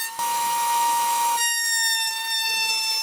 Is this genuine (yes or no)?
no